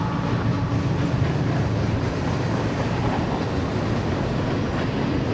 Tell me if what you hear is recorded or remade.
recorded